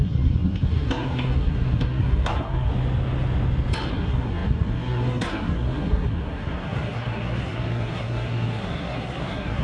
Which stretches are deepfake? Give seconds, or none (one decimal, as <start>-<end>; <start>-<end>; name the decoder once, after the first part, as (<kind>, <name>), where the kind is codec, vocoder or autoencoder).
0.0-2.7 (codec, SNAC); 3.9-9.6